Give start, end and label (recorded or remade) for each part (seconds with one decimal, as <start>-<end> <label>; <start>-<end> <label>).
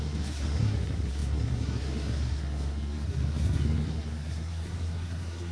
0.0-5.5 remade